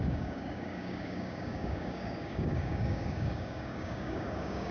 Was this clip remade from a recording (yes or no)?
yes